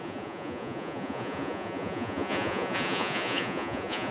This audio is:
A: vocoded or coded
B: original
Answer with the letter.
A